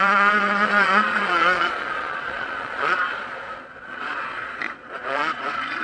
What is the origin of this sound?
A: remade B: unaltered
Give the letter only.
A